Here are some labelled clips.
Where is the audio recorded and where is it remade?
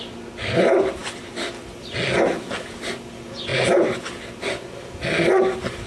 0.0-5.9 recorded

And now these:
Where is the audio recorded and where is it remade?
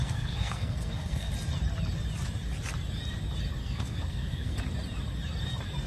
0.0-1.3 remade; 1.3-3.6 recorded; 3.6-4.6 remade; 4.6-5.9 recorded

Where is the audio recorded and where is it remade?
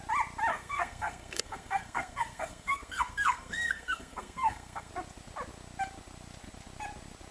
0.0-0.5 recorded; 0.5-4.9 remade; 4.9-7.3 recorded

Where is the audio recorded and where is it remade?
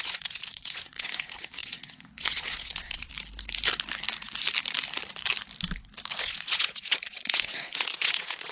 0.0-3.1 remade; 3.1-6.2 recorded; 6.2-8.5 remade